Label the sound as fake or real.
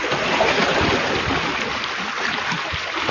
real